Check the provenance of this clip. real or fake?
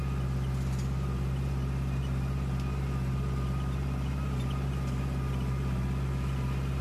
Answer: real